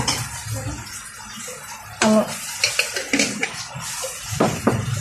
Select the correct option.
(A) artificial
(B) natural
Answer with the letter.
B